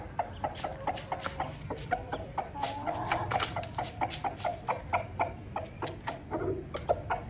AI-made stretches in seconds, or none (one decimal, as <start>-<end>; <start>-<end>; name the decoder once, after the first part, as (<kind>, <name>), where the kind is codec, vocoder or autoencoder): 0.7-4.0 (vocoder, BigVGAN v2); 4.5-5.1